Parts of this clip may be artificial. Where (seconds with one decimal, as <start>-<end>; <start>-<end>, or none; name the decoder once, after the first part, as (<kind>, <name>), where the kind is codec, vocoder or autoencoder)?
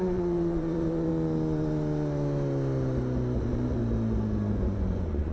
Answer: 0.0-1.1 (vocoder, Vocos); 3.4-3.8; 4.5-5.3